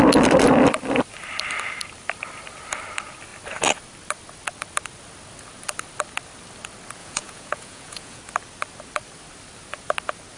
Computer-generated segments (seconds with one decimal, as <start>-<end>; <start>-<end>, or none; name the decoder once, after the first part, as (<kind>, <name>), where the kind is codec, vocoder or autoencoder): 7.0-8.2 (vocoder, Vocos)